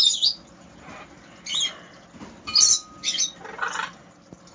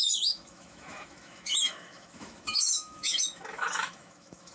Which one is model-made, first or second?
second